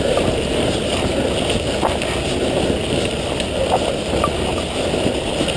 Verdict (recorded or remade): recorded